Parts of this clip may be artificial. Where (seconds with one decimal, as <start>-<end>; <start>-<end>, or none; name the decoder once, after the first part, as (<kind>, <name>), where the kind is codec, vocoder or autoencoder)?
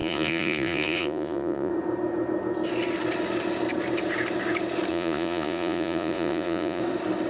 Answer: 0.0-1.7 (vocoder, Vocos); 4.9-6.8